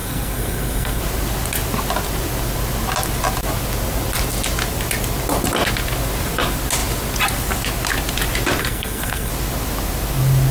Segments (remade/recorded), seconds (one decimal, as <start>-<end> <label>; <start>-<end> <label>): 0.0-1.0 remade; 1.0-8.6 recorded; 8.6-9.3 remade; 9.3-10.5 recorded